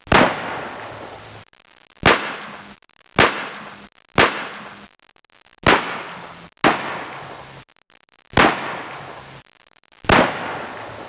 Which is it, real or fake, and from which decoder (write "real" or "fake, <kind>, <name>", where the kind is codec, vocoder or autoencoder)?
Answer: real